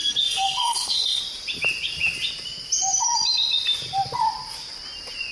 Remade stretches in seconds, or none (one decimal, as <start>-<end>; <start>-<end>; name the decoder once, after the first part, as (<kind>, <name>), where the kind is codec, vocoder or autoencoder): 0.0-1.2 (codec, SNAC)